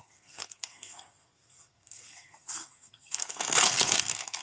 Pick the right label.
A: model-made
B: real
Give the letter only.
A